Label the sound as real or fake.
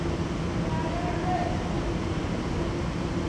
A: real